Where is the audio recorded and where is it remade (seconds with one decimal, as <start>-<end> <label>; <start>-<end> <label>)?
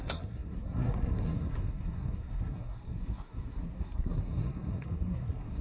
0.0-5.6 remade